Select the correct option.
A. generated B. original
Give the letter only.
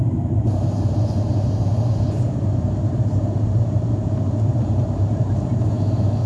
A